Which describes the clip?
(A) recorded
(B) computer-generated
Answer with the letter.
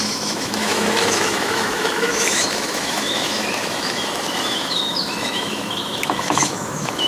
B